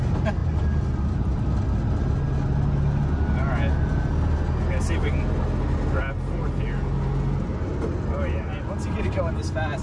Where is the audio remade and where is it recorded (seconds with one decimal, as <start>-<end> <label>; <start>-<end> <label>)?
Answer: 0.0-9.8 recorded